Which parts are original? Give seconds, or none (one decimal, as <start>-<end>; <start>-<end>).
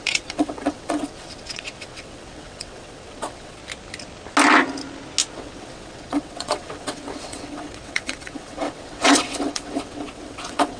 3.6-5.3